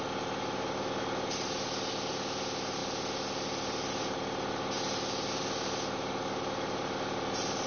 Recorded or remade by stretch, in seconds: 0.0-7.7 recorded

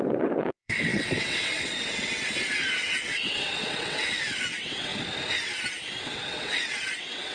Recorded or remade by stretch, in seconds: 0.0-4.9 remade; 4.9-6.0 recorded; 6.0-7.3 remade

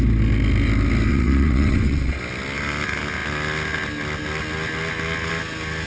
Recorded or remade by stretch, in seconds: 0.0-1.1 recorded; 1.1-2.2 remade; 2.2-5.9 recorded